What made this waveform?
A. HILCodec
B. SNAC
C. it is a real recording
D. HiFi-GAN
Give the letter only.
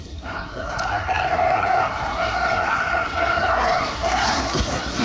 B